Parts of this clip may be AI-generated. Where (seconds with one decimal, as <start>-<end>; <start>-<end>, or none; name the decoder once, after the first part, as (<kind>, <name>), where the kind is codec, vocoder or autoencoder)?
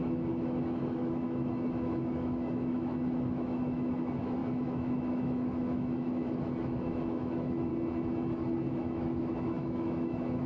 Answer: 0.0-7.7 (autoencoder, DAC-VAE); 8.7-10.5